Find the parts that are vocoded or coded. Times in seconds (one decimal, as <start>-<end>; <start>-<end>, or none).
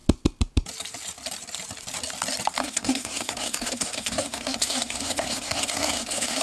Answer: 2.6-6.4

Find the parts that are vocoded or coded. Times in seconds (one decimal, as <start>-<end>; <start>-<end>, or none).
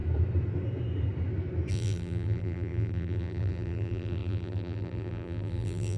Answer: 1.7-6.0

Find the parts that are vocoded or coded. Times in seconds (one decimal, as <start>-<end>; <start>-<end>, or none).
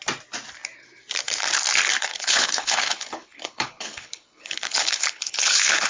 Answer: 2.1-5.9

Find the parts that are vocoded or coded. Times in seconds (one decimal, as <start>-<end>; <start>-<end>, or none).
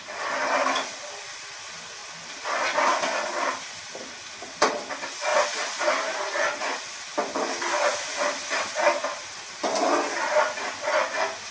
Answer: none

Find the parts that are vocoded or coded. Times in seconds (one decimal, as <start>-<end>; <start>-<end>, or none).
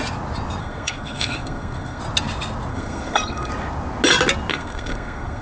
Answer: 0.6-2.0; 2.7-3.5; 4.5-5.4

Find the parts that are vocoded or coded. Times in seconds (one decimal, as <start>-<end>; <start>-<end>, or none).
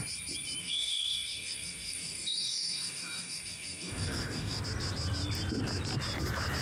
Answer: 0.6-4.6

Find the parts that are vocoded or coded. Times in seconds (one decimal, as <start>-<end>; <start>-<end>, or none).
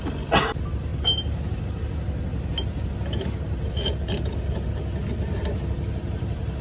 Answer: 0.9-1.6; 6.0-6.6